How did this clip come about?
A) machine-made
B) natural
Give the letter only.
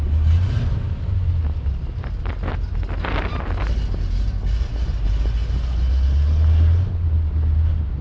B